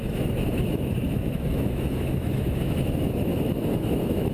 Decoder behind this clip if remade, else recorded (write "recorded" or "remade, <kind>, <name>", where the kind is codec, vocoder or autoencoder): remade, autoencoder, DAC-VAE